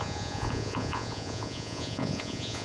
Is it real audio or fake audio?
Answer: fake